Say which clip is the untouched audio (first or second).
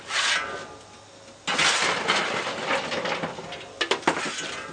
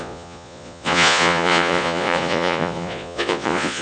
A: first